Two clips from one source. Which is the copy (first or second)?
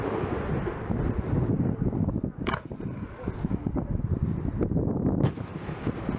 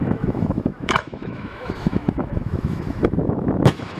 second